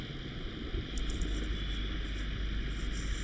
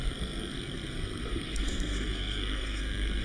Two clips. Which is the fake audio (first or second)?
second